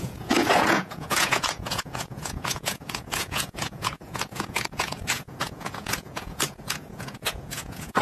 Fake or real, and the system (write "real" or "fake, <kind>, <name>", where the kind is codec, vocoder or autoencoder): fake, vocoder, Vocos